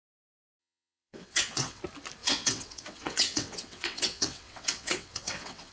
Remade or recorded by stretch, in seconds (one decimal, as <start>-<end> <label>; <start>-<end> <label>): 0.0-0.6 recorded; 0.6-1.8 remade; 1.8-2.2 recorded; 2.2-5.7 remade